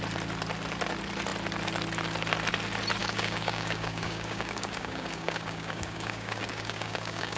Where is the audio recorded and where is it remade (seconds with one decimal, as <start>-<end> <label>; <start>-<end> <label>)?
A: 0.0-3.0 recorded; 3.0-7.4 remade